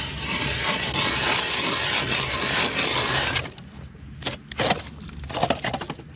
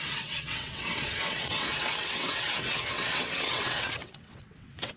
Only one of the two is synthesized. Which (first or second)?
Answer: second